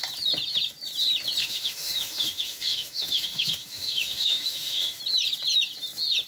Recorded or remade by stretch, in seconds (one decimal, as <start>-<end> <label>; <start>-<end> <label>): 0.0-1.4 recorded; 1.4-5.0 remade; 5.0-6.3 recorded